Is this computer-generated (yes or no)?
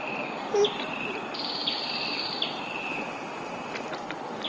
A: yes